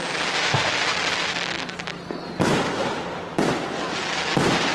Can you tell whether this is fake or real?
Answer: real